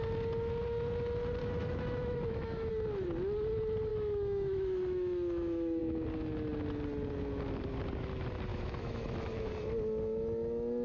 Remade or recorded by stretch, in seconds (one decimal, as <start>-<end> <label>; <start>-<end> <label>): 0.0-1.4 recorded; 1.4-2.7 remade; 2.7-3.9 recorded; 3.9-5.8 remade; 5.8-8.5 recorded; 8.5-9.5 remade; 9.5-10.8 recorded